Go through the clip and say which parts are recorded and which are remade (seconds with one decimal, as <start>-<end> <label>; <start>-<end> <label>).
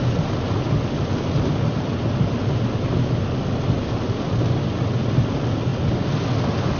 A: 0.0-6.8 recorded